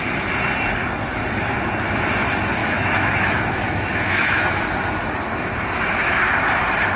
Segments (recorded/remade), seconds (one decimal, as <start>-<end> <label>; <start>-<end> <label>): 0.0-2.6 recorded; 2.6-4.6 remade; 4.6-7.0 recorded